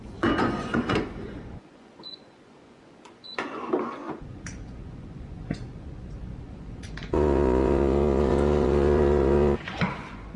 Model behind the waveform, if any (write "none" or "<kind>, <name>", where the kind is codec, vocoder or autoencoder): vocoder, Vocos